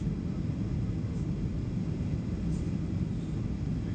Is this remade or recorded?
recorded